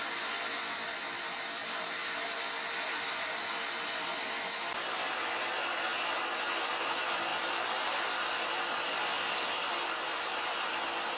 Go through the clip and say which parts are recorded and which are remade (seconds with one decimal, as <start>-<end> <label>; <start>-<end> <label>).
0.0-11.2 recorded